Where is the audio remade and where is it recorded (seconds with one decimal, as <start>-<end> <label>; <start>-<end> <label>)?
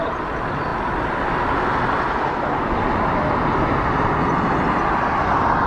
0.0-5.7 recorded